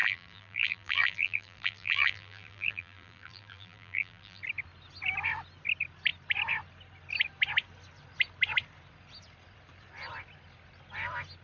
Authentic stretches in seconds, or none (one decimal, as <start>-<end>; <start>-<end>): 4.4-11.4

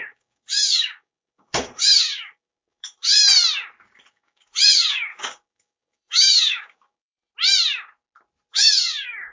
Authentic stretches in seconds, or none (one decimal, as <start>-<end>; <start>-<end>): 3.2-4.1; 7.3-8.5

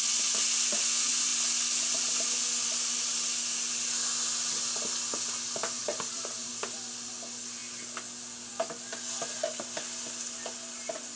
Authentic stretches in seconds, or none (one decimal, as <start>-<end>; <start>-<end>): 0.0-5.8; 6.5-11.2

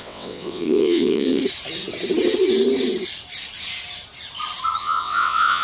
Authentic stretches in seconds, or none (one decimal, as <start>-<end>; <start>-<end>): 1.4-4.8

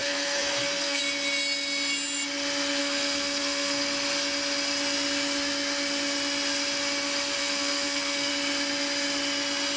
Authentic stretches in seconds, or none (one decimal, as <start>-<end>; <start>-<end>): 1.0-2.8; 3.8-7.4; 8.3-9.8

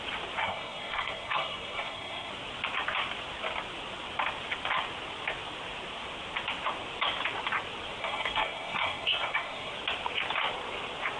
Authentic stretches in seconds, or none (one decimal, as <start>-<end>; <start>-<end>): 0.0-0.4; 2.3-8.0; 9.7-11.2

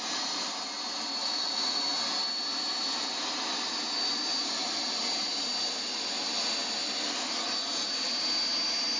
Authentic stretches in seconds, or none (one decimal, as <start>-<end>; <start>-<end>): 0.0-1.2; 1.8-9.0